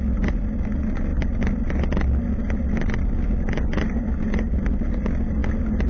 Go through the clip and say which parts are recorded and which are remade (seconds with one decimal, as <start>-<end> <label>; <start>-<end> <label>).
0.0-5.9 recorded